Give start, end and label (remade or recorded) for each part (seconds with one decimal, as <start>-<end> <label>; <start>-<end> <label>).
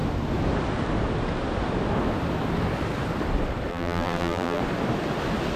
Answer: 0.0-3.7 recorded; 3.7-4.6 remade; 4.6-5.6 recorded